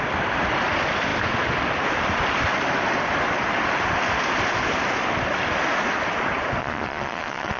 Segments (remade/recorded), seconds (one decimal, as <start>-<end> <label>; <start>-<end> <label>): 0.0-6.6 recorded; 6.6-7.6 remade